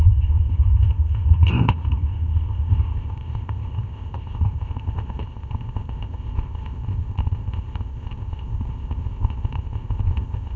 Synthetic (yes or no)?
yes